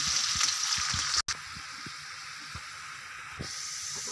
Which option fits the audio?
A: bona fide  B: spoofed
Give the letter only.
A